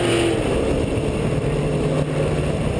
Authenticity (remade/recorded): recorded